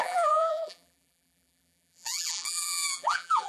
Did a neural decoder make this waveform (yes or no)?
yes